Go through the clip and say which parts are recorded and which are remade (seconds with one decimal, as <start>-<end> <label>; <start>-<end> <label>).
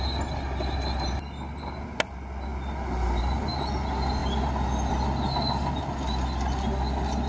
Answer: 0.0-7.3 recorded